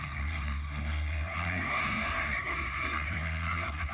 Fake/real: fake